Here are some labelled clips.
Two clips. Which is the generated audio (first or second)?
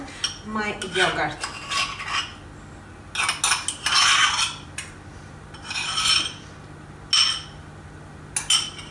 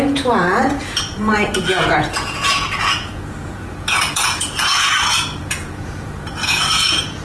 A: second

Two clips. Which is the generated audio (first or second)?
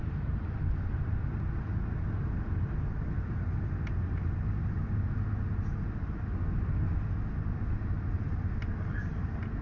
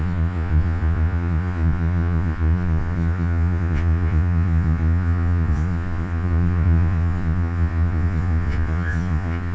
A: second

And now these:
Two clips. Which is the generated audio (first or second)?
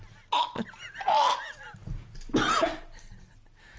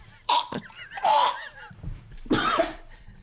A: second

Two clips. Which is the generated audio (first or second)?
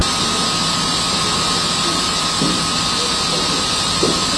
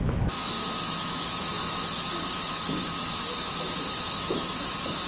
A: second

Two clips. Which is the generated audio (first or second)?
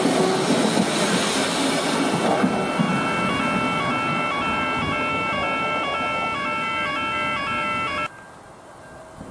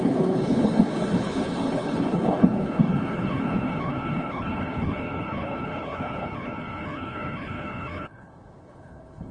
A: second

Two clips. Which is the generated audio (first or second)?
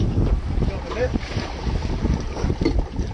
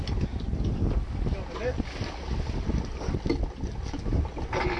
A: first